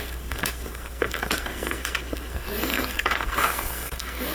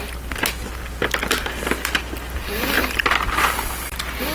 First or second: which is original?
second